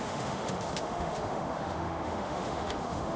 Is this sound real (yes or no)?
no